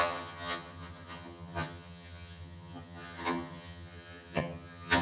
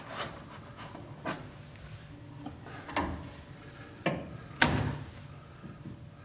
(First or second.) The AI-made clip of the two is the first